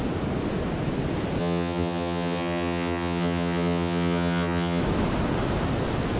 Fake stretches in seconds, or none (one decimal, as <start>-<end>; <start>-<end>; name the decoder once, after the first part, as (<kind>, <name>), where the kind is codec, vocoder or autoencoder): 1.4-4.8 (vocoder, HiFi-GAN)